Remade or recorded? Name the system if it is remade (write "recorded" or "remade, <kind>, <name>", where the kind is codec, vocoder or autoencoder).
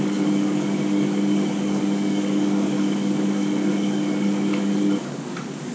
remade, codec, DAC